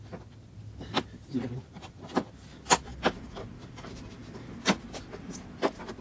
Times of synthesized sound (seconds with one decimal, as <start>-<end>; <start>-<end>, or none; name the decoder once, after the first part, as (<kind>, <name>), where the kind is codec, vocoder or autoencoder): 0.9-1.4 (vocoder, BigVGAN v2)